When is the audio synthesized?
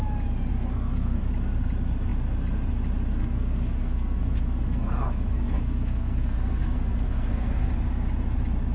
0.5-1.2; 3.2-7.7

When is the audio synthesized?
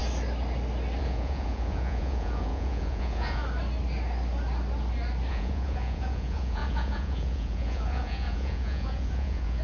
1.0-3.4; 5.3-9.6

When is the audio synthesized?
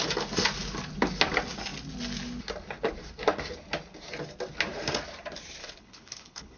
5.6-6.6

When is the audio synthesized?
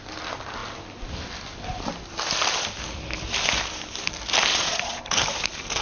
4.5-5.0